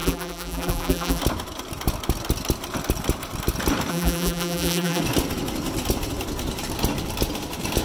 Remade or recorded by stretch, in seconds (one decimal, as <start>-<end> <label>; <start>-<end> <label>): 0.0-1.2 remade; 1.2-3.9 recorded; 3.9-5.0 remade; 5.0-7.8 recorded